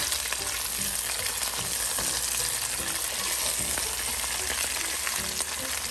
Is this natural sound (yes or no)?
yes